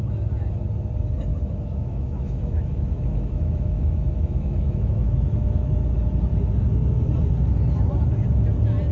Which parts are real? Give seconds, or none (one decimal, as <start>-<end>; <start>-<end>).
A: 0.0-1.3; 5.8-8.9